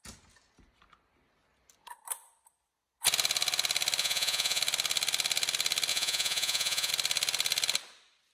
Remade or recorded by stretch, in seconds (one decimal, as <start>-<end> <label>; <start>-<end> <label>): 0.0-4.0 recorded; 4.0-4.6 remade; 4.6-5.9 recorded; 5.9-6.9 remade; 6.9-8.3 recorded